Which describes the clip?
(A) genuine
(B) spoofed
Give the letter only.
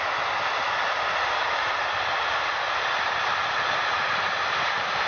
A